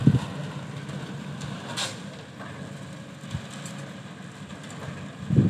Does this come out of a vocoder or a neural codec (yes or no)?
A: no